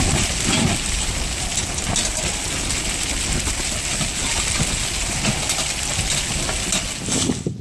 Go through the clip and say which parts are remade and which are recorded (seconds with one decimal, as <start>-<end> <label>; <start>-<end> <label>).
0.0-7.6 recorded